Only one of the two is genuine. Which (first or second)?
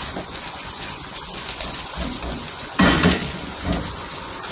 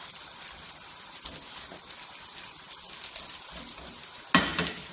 second